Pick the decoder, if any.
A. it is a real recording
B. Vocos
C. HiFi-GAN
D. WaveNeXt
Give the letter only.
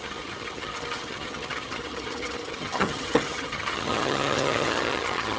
C